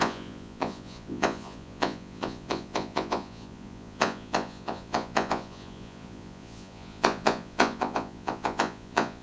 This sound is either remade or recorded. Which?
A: remade